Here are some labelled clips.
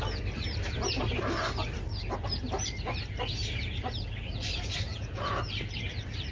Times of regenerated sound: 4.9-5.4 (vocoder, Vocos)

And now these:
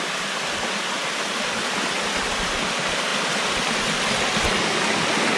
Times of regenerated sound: none

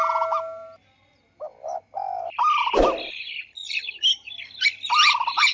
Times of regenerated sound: none

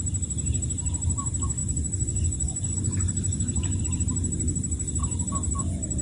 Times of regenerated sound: 1.6-3.8 (vocoder, Vocos)